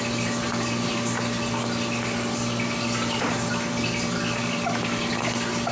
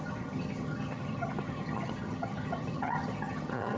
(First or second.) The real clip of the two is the first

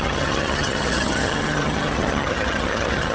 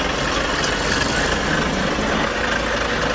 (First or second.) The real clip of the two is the second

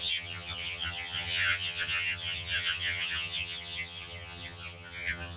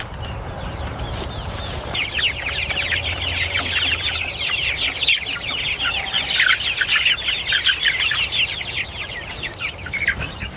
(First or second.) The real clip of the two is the second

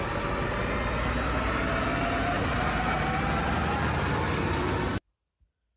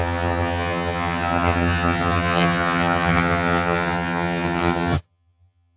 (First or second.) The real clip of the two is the first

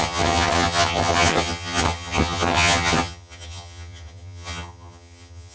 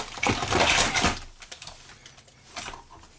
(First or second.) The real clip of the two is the second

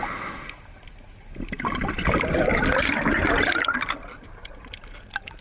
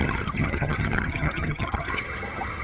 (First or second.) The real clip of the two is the first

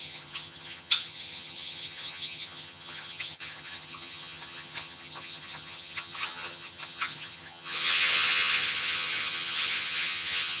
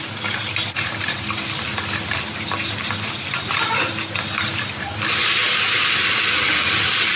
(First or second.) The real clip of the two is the second